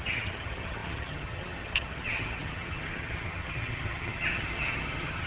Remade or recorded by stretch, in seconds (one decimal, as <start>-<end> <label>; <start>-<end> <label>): 0.0-5.3 remade